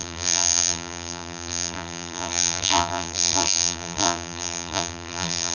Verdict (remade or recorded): remade